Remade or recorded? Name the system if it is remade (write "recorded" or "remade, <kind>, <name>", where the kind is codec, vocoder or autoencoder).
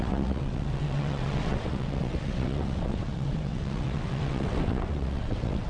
remade, vocoder, WaveNeXt